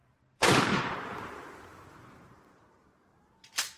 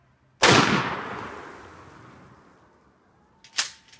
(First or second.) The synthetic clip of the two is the first